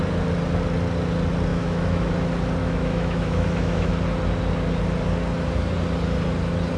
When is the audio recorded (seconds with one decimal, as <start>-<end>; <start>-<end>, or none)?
0.0-1.5; 2.1-2.6; 3.9-6.8